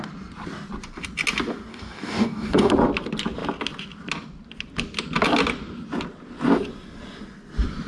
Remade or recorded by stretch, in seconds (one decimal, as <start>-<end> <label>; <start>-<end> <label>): 0.0-1.7 recorded; 1.7-2.7 remade; 2.7-7.9 recorded